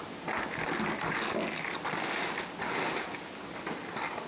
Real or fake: real